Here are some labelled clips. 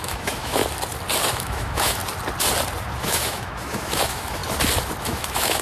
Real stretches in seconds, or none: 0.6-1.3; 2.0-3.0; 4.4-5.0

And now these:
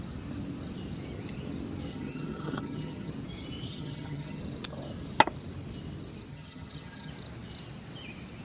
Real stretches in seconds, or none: 0.0-1.9; 3.1-3.7; 4.4-6.3; 7.1-8.4

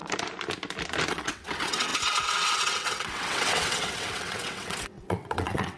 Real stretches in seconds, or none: 0.0-1.1

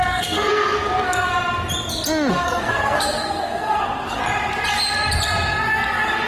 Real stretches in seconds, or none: 1.3-2.3; 4.2-6.3

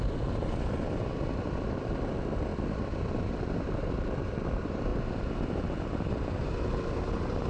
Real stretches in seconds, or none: 0.0-7.5